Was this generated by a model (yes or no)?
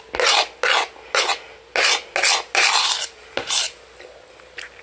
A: no